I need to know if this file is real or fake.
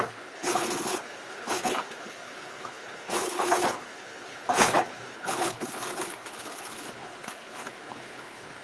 fake